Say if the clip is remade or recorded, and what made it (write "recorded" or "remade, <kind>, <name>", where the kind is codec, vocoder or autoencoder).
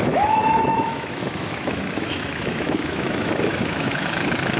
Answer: remade, autoencoder, DAC-VAE